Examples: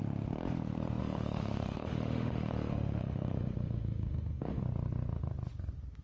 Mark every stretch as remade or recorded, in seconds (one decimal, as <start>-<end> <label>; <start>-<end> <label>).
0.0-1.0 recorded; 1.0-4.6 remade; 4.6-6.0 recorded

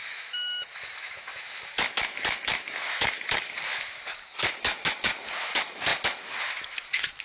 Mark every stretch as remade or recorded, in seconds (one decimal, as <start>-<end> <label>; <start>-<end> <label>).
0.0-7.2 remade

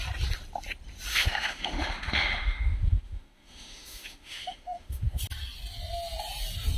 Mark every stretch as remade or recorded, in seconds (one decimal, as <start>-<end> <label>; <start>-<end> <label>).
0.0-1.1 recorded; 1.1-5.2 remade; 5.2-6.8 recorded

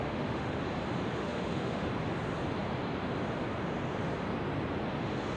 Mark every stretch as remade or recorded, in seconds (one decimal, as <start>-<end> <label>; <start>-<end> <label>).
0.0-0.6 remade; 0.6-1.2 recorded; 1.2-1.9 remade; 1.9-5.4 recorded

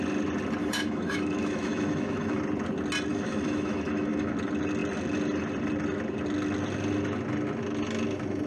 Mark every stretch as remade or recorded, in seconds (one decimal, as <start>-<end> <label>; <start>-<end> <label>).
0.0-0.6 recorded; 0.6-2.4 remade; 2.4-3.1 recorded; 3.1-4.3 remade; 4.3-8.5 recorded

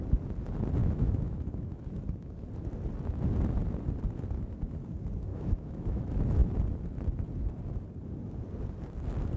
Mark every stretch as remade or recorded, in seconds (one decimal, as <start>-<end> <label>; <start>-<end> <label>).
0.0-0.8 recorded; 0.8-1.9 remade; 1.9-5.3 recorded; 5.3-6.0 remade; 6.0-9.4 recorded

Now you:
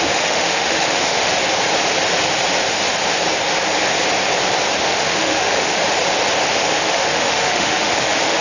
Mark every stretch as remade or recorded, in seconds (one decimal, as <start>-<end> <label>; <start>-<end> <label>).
0.0-1.3 remade; 1.3-4.8 recorded; 4.8-5.7 remade; 5.7-6.5 recorded; 6.5-8.4 remade

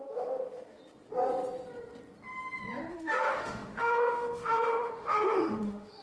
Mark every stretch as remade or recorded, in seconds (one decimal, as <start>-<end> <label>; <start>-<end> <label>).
0.0-0.8 remade; 0.8-2.9 recorded; 2.9-6.0 remade